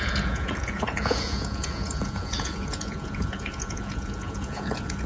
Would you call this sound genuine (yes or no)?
no